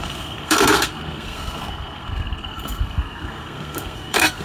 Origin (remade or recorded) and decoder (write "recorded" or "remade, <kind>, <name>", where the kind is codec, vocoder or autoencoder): remade, codec, SNAC